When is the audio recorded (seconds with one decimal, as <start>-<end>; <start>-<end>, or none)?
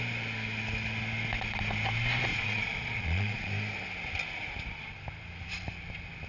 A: 0.0-2.3; 3.5-6.3